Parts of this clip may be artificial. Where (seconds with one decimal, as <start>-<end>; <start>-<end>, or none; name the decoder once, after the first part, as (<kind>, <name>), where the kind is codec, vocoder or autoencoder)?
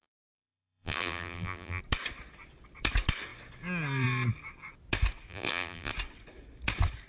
0.0-1.8 (vocoder, BigVGAN v2); 5.3-5.9